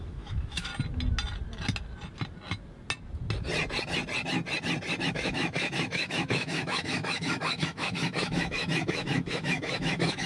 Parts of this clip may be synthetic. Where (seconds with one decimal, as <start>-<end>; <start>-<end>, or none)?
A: 0.0-0.7; 5.1-10.3